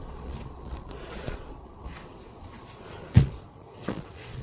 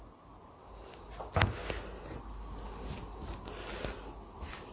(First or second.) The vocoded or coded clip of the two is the first